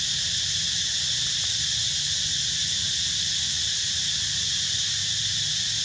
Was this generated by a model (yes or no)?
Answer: no